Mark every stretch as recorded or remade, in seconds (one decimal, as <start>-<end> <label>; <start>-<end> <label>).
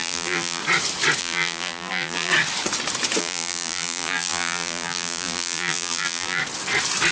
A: 0.0-0.6 remade; 0.6-1.2 recorded; 1.2-2.3 remade; 2.3-3.2 recorded; 3.2-6.4 remade; 6.4-7.1 recorded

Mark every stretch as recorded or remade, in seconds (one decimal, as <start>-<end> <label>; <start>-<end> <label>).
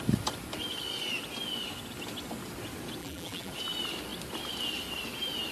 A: 0.0-3.0 recorded; 3.0-3.5 remade; 3.5-5.5 recorded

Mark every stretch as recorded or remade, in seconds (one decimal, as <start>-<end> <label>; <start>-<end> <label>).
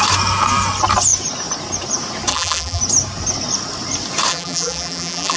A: 0.0-2.3 recorded; 2.3-2.8 remade; 2.8-4.3 recorded; 4.3-5.4 remade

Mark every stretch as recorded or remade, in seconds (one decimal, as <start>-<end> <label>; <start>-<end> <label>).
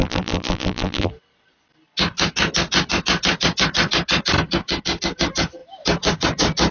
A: 0.0-1.1 remade; 1.1-6.7 recorded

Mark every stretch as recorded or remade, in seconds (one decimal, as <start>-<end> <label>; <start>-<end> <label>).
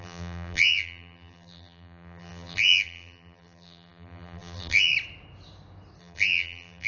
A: 0.0-4.9 remade; 4.9-6.0 recorded; 6.0-6.9 remade